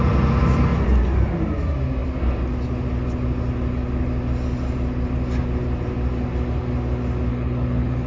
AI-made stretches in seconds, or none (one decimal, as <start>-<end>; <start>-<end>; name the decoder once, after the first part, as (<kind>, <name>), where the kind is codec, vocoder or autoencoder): 7.3-8.1 (codec, HILCodec)